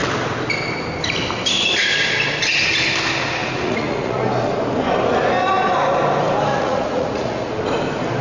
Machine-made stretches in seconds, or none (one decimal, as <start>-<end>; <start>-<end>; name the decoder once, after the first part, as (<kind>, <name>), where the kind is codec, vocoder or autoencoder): 3.4-4.2 (vocoder, Vocos); 6.5-7.5